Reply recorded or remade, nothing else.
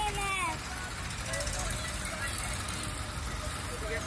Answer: recorded